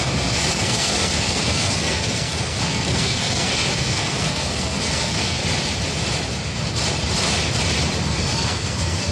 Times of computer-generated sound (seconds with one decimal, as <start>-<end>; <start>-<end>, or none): 0.0-5.4; 8.1-9.1

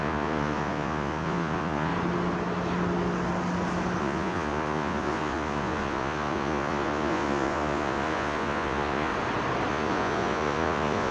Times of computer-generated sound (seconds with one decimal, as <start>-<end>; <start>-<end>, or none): 0.0-1.9; 4.0-9.1; 9.7-11.1

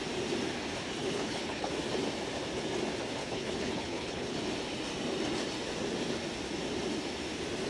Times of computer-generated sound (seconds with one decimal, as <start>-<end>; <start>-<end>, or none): 1.0-1.7; 3.2-4.4